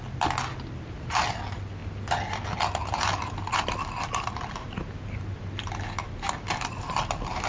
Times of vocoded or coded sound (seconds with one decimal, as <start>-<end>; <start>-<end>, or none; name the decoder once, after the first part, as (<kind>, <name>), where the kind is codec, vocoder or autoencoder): none

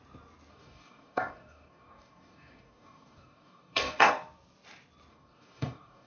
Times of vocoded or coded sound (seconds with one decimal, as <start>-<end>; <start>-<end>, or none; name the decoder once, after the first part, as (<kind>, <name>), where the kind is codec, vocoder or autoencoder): 0.5-4.1 (codec, DAC); 5.1-6.1

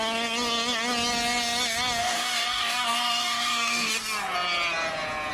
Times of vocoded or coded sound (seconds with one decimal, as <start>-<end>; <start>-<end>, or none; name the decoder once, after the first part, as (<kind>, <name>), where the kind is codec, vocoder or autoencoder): 2.0-3.9 (codec, DAC)

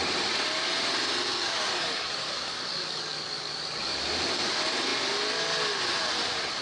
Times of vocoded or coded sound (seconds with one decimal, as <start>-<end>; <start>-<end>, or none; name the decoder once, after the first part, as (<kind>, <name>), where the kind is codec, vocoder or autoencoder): 1.3-4.0 (codec, DAC)

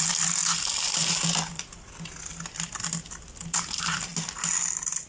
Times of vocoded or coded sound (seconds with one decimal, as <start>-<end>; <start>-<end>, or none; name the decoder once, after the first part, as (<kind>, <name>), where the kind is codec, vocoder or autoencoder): none